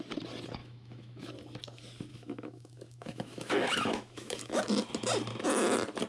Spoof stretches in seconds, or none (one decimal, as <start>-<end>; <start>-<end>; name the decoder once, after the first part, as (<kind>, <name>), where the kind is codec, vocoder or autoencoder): 0.6-1.3 (autoencoder, DAC-VAE); 2.1-4.6